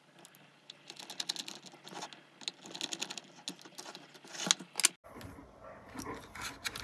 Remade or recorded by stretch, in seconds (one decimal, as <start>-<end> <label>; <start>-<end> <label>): 0.0-6.8 recorded